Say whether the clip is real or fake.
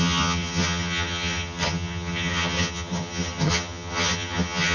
fake